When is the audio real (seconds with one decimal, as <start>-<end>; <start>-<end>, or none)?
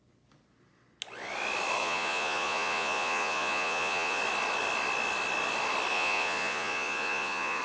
0.0-1.8; 4.2-5.9